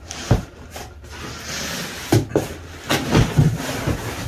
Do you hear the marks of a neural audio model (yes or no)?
no